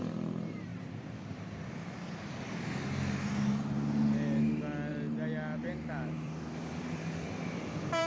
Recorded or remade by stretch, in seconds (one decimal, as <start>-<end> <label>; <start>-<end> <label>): 0.0-0.7 recorded; 0.7-3.0 remade; 3.0-4.9 recorded; 4.9-8.1 remade

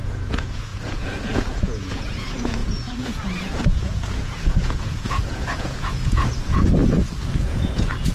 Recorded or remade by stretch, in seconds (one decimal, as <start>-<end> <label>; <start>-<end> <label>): 0.0-6.8 remade; 6.8-7.4 recorded; 7.4-8.1 remade

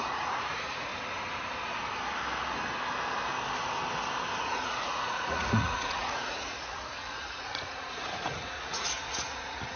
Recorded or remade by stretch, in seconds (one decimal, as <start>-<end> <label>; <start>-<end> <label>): 0.0-0.9 remade; 0.9-4.4 recorded; 4.4-9.8 remade

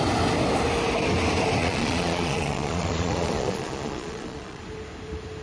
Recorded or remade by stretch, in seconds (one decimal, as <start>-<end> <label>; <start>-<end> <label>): 0.0-1.6 recorded; 1.6-4.6 remade; 4.6-5.4 recorded

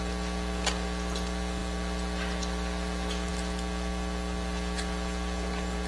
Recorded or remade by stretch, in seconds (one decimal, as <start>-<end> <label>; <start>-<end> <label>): 0.0-5.9 recorded